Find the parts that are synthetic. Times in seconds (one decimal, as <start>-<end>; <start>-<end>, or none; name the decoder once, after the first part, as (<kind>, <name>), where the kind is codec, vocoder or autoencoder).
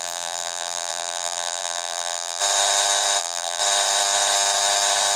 0.0-2.4 (vocoder, BigVGAN v2); 3.2-3.6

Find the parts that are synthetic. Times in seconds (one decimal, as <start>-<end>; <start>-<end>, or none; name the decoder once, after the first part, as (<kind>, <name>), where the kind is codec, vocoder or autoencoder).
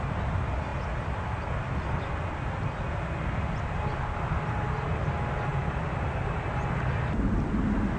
none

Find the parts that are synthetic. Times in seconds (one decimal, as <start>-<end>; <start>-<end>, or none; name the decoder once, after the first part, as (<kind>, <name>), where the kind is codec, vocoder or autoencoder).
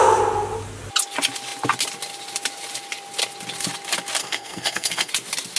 4.2-5.1 (codec, SNAC)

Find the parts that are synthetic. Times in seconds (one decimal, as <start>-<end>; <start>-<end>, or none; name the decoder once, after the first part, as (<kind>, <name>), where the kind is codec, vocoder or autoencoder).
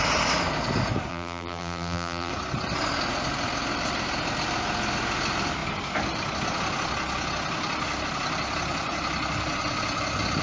1.1-2.3 (vocoder, BigVGAN v2)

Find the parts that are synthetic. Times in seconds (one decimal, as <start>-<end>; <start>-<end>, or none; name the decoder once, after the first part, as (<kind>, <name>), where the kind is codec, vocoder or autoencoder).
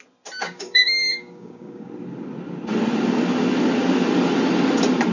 0.4-1.9 (codec, DAC)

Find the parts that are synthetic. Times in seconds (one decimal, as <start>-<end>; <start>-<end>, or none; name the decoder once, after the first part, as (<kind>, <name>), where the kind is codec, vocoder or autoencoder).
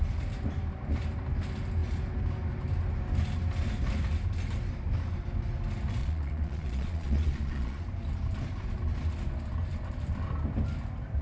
6.0-7.8 (vocoder, Vocos)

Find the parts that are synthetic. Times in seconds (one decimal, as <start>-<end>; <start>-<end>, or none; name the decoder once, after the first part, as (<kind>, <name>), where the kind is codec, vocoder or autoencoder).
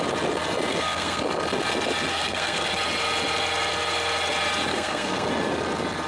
0.7-1.2 (codec, SNAC); 2.1-2.7; 4.7-5.3